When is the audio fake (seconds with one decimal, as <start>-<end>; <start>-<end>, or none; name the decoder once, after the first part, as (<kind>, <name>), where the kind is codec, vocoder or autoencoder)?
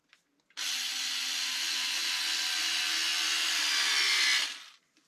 none